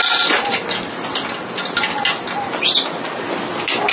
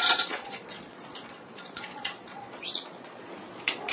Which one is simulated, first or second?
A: second